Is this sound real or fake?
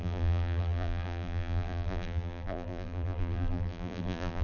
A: fake